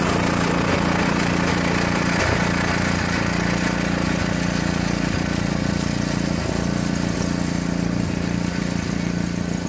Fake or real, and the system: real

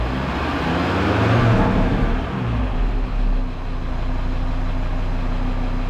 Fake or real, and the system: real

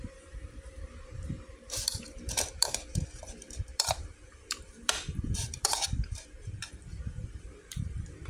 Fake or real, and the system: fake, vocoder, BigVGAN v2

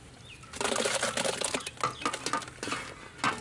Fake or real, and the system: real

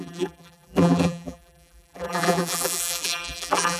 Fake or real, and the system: fake, vocoder, BigVGAN v2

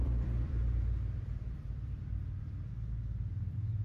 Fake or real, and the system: fake, vocoder, BigVGAN v2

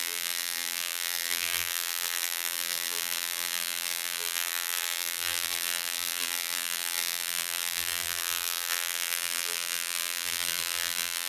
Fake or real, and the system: fake, vocoder, BigVGAN v2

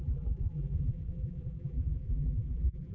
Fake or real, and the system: fake, vocoder, BigVGAN v2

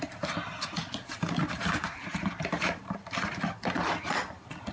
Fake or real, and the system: fake, vocoder, BigVGAN v2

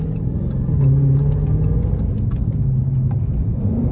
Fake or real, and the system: real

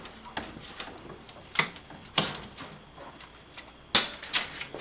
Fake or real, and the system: real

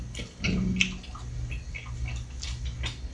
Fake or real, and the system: real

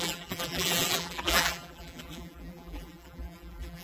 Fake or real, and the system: fake, vocoder, BigVGAN v2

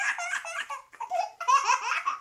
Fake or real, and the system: fake, vocoder, BigVGAN v2